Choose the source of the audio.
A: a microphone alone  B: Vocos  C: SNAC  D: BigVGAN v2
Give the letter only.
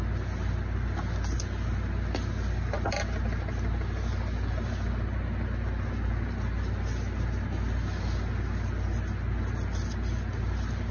A